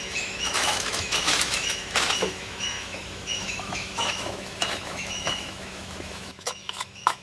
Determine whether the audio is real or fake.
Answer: fake